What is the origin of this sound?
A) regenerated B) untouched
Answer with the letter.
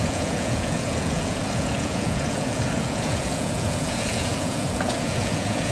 A